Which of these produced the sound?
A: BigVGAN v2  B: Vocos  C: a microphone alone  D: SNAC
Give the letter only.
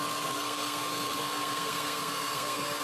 D